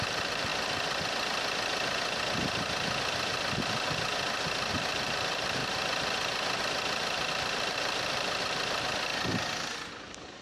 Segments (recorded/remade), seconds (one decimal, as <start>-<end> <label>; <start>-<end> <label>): 0.0-0.5 remade; 0.5-4.7 recorded; 4.7-5.6 remade; 5.6-7.3 recorded; 7.3-9.1 remade; 9.1-10.4 recorded